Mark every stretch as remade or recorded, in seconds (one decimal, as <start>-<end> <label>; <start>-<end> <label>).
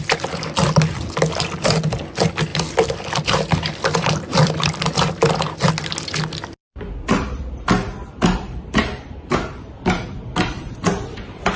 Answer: 0.0-2.5 recorded; 2.5-5.7 remade; 5.7-6.6 recorded; 6.6-11.6 remade